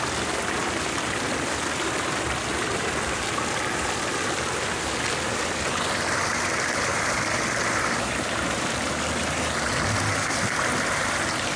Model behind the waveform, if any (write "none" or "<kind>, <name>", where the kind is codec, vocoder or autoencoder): none